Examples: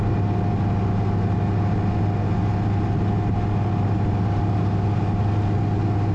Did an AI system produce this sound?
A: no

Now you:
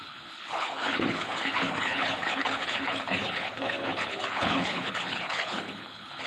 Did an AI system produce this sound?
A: yes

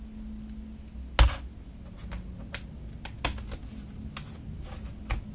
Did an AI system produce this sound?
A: no